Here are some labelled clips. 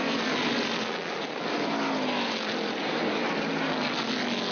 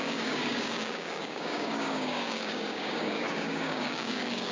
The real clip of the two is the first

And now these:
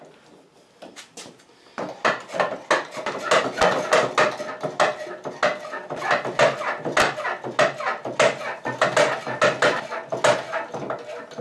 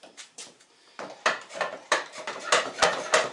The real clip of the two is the first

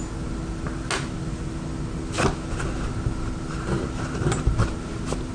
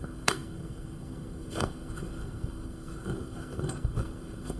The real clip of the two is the first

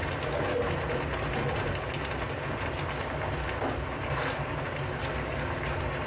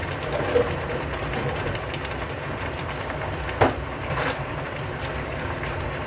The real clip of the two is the first